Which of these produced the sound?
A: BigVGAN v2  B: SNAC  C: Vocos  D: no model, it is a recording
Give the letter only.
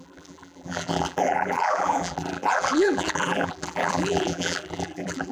A